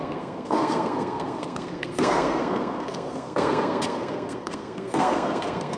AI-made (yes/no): yes